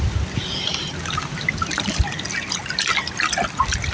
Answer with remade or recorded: recorded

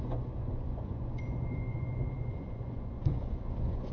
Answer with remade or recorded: remade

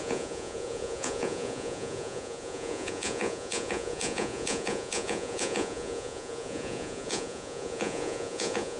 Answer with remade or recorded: remade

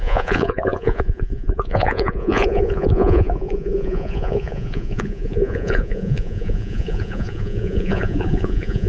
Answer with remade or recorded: remade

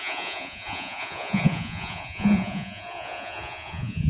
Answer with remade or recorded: remade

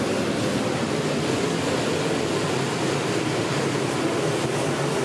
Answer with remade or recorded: recorded